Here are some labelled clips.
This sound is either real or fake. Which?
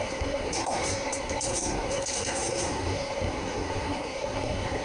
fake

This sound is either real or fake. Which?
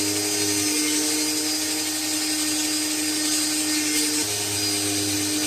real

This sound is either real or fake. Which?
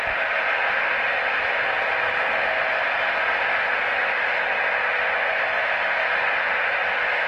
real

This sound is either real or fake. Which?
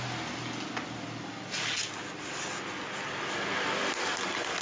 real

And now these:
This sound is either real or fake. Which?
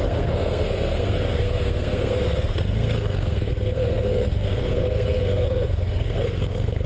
fake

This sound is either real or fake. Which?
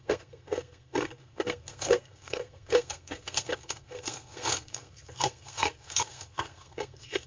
fake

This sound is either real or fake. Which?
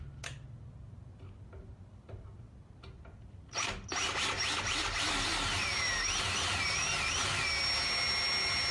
real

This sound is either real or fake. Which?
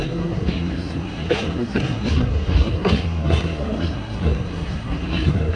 fake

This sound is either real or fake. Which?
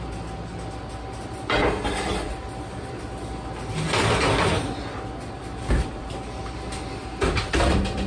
real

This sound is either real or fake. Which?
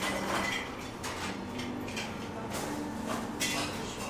real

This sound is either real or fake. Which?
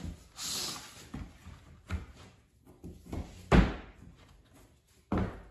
real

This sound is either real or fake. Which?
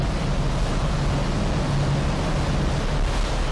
real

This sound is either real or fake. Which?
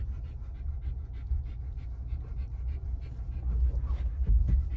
real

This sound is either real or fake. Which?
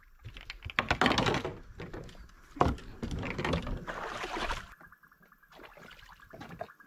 real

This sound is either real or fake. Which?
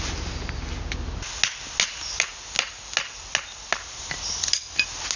real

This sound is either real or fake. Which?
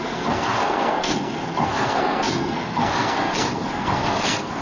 fake